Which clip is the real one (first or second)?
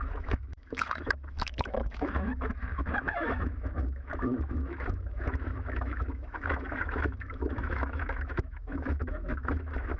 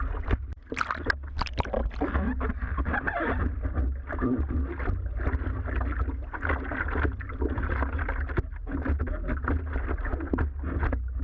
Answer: second